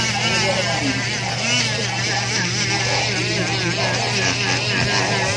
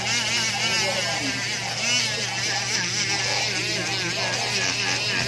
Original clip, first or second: second